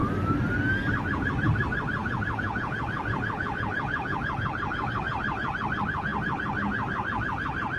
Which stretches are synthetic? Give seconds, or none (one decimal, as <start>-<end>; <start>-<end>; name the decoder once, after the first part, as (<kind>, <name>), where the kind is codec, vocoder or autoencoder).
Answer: 2.0-5.0 (vocoder, Vocos)